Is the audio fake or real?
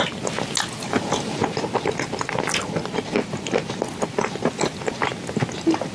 real